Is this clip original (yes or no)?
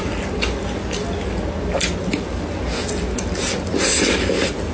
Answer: yes